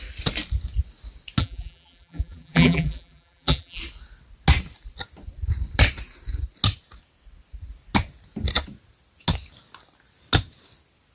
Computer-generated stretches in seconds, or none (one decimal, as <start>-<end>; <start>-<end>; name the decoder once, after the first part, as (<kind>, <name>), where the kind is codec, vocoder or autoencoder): 1.4-3.8 (vocoder, BigVGAN v2)